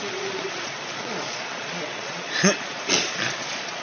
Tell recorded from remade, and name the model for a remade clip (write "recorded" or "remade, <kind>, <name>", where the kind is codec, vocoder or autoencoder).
remade, vocoder, Vocos